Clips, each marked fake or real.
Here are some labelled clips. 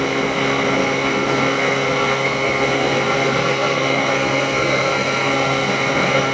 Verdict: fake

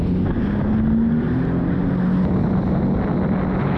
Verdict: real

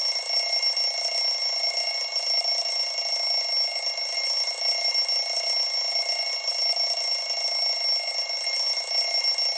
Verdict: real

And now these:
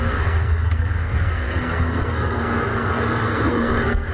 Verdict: fake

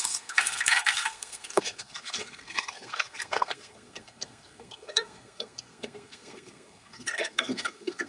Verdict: fake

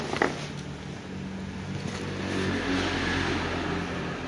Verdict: real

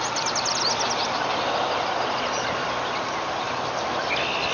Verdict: real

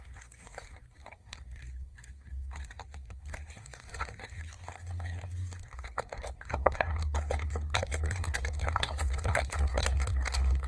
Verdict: fake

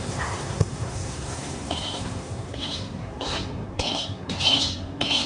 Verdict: fake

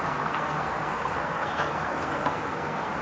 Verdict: fake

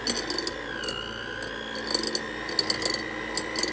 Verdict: real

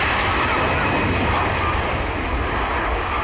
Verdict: real